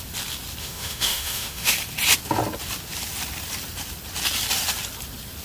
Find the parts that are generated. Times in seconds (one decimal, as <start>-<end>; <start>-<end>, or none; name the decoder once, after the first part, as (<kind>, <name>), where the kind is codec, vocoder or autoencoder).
0.6-1.7 (autoencoder, DAC-VAE)